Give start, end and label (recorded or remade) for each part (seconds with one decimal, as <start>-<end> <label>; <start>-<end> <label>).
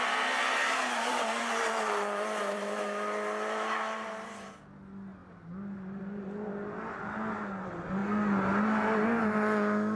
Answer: 0.0-1.4 recorded; 1.4-4.5 remade; 4.5-10.0 recorded